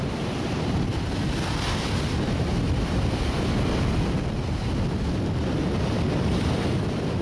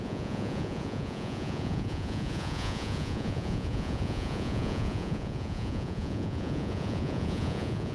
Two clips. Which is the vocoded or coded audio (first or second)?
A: second